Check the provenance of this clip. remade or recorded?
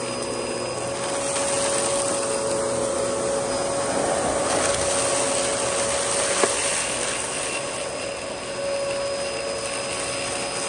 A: recorded